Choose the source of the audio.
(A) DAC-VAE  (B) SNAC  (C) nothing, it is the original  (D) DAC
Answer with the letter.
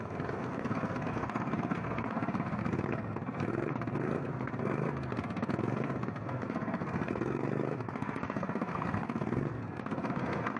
B